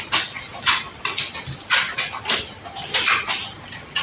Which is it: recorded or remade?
recorded